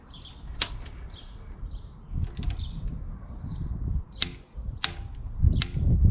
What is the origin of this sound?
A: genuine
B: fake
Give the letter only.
A